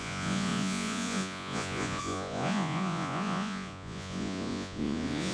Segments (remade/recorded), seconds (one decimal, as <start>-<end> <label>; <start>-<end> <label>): 0.0-5.3 remade